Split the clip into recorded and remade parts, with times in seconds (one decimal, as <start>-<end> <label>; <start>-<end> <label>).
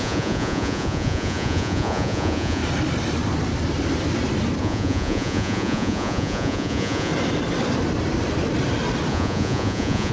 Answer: 0.0-2.6 remade; 2.6-4.6 recorded; 4.6-7.1 remade; 7.1-9.1 recorded; 9.1-10.1 remade